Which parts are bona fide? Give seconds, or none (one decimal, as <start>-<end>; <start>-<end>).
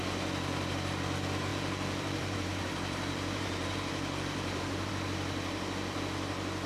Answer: 0.0-1.5; 4.9-6.7